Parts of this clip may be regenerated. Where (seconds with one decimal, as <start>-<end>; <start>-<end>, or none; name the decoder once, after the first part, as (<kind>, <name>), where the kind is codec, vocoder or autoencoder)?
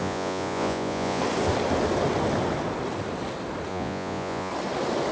0.0-1.2 (vocoder, Vocos); 3.7-4.5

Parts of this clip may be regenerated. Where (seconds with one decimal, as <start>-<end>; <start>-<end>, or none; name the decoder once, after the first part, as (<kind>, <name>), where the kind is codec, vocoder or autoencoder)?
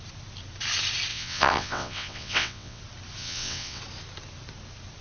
1.1-2.8 (vocoder, WaveNeXt); 3.2-3.8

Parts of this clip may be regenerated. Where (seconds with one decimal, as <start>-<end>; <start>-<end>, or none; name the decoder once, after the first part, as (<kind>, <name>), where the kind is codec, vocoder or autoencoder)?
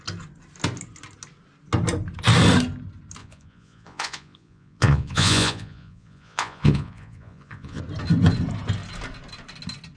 3.2-7.8 (vocoder, Vocos)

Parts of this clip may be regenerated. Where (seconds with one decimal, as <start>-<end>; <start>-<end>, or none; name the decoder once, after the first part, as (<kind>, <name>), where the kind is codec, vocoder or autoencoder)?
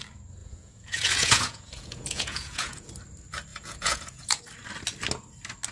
0.4-2.9 (vocoder, Vocos); 3.5-4.4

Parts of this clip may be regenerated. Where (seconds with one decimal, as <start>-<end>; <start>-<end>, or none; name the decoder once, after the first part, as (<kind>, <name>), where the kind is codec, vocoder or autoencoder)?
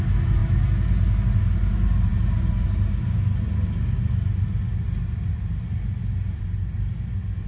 none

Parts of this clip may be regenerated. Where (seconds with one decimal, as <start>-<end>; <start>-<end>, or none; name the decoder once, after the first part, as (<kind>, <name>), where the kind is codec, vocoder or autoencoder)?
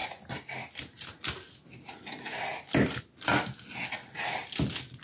none